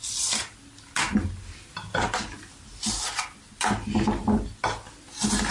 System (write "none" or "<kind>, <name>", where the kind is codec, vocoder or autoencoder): none